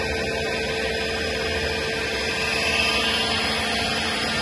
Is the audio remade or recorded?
recorded